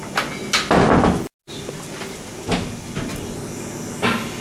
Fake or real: real